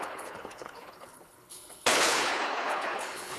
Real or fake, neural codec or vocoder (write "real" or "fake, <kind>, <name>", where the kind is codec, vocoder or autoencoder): fake, codec, HILCodec